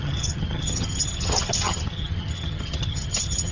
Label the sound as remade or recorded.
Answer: remade